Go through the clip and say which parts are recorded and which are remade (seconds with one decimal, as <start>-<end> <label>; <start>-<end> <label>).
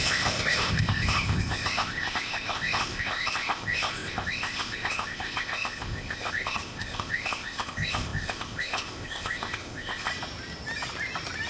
0.0-10.1 remade; 10.1-11.5 recorded